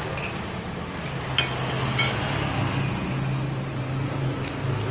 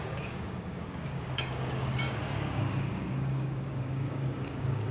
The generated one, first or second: second